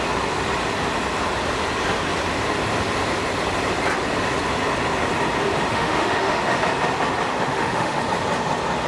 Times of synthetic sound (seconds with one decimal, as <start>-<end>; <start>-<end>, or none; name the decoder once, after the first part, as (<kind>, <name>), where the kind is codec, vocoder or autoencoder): 5.7-6.6 (autoencoder, DAC-VAE); 7.3-8.0